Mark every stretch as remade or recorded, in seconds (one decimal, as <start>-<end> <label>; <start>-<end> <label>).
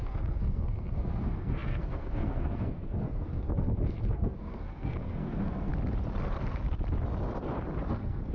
0.0-5.7 remade; 5.7-7.9 recorded; 7.9-8.3 remade